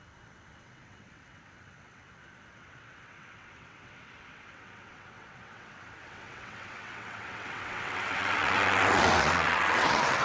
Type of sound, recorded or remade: remade